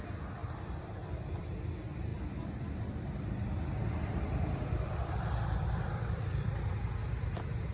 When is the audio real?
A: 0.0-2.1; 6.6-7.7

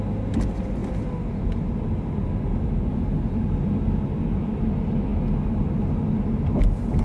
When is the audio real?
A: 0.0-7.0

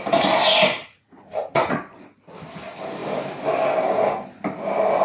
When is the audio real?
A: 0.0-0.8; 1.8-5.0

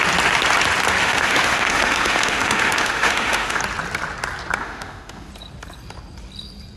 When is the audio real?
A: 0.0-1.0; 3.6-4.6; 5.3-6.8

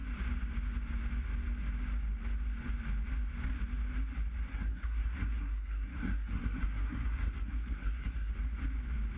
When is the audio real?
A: 0.0-4.5; 8.3-9.2

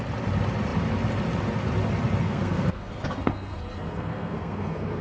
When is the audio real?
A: 0.0-2.2